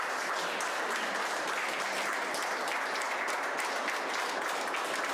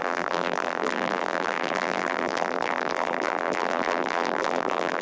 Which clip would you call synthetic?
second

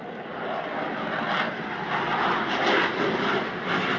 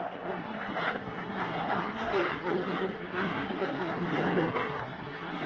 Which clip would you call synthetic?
second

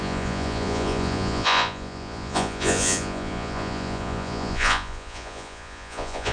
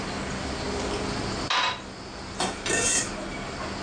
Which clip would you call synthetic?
first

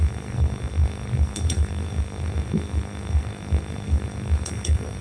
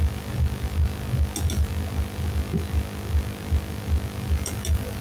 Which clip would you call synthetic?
first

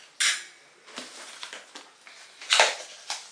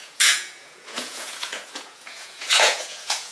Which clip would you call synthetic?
second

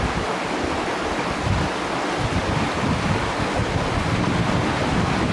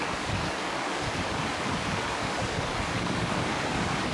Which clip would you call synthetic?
second